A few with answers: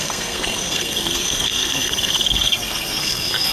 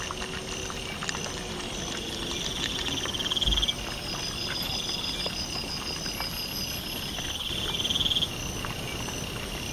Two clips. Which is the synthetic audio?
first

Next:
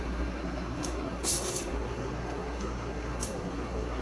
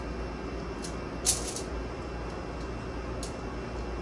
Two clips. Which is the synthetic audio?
first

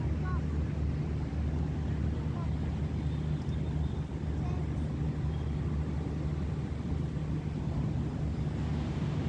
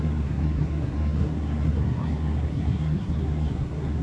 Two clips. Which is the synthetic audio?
second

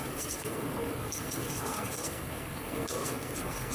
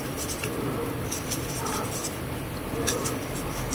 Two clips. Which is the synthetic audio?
first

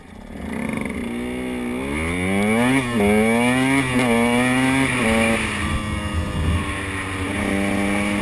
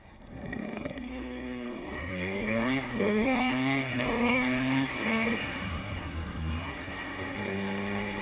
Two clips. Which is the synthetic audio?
second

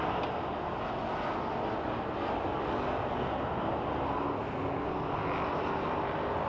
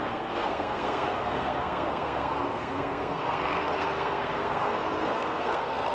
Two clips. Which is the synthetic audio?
second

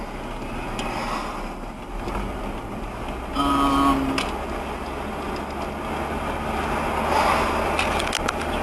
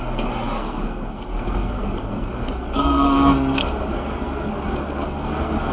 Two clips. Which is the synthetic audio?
second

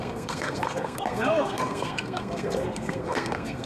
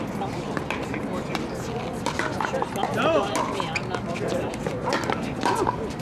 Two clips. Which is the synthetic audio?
first